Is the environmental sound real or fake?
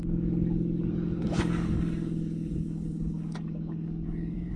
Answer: fake